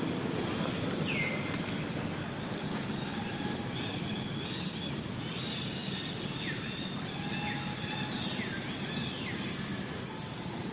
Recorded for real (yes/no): yes